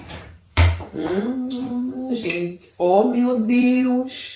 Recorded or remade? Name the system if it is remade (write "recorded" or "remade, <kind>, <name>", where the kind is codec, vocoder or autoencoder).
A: remade, vocoder, Vocos